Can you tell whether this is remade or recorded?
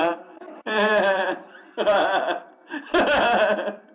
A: remade